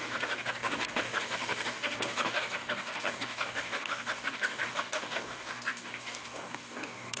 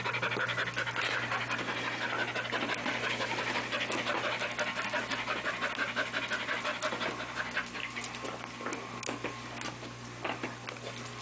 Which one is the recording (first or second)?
second